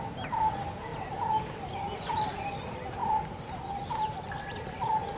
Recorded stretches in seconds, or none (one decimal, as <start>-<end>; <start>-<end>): 0.0-5.2